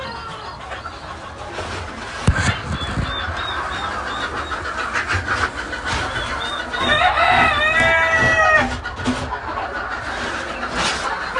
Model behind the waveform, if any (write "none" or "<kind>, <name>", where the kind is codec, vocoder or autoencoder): none